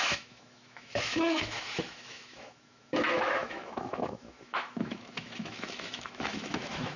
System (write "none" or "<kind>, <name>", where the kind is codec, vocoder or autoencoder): autoencoder, DAC-VAE